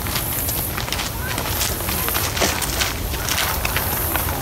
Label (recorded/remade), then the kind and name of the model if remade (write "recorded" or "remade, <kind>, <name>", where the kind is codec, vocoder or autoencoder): recorded